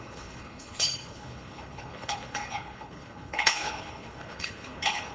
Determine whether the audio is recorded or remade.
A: remade